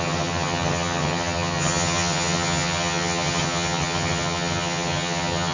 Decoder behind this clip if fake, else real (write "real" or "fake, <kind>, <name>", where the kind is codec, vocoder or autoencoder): fake, vocoder, HiFi-GAN